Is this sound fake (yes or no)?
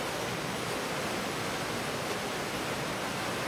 no